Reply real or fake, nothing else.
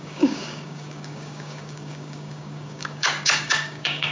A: fake